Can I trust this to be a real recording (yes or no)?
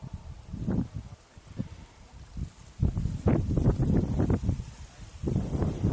no